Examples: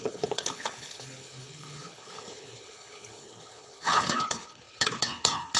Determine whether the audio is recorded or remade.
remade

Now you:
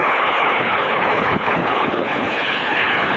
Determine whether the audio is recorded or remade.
remade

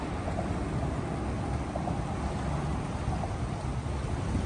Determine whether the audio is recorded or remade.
recorded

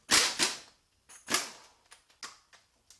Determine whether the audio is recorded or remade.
recorded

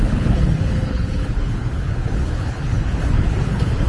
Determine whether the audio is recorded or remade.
remade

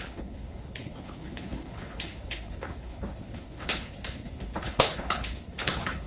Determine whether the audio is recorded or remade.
remade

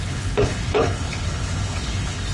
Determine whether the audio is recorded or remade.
remade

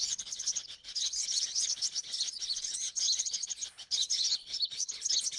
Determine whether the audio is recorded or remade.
remade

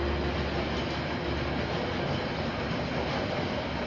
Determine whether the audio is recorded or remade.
recorded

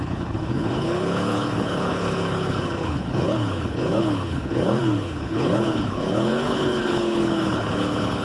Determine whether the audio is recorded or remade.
remade